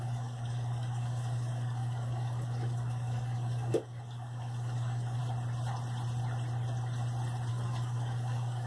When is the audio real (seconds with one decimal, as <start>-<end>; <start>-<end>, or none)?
5.2-7.5